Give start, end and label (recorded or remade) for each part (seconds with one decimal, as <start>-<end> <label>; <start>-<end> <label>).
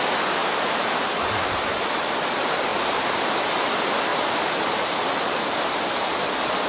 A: 0.0-0.4 recorded; 0.4-1.6 remade; 1.6-2.7 recorded; 2.7-3.3 remade; 3.3-4.1 recorded; 4.1-4.9 remade; 4.9-6.7 recorded